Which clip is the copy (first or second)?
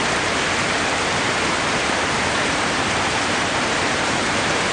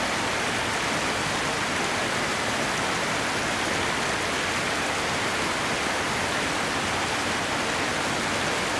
first